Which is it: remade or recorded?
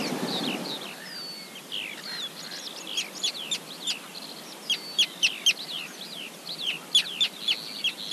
recorded